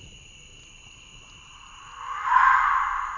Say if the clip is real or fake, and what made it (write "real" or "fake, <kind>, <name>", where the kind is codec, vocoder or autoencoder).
real